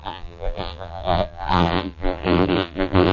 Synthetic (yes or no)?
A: yes